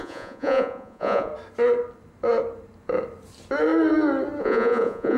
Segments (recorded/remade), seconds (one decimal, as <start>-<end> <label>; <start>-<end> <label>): 0.0-1.3 remade; 1.3-4.4 recorded; 4.4-5.2 remade